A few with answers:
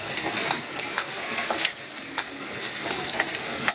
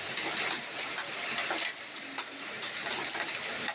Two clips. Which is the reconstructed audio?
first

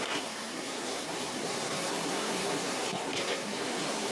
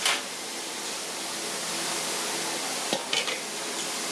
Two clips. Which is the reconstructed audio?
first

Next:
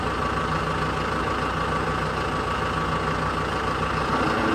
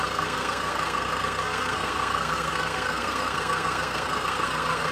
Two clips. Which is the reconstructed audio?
second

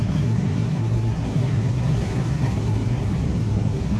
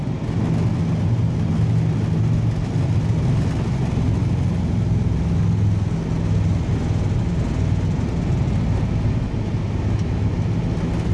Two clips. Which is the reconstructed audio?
first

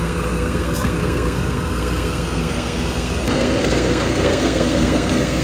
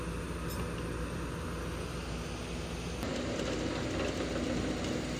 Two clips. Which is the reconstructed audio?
first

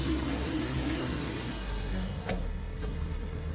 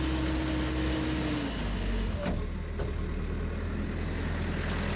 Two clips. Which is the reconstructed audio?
first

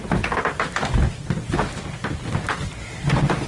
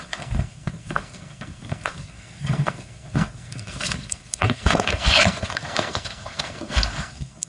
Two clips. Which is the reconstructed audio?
second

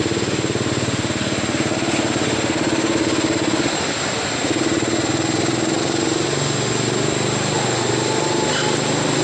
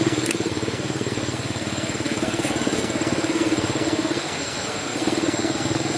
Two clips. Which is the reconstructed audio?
second